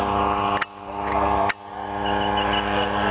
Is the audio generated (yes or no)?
no